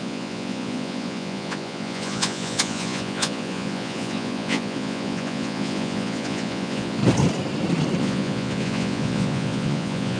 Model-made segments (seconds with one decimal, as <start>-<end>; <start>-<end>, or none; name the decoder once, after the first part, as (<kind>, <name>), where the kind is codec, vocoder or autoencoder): 0.0-7.0 (vocoder, Vocos); 8.0-10.2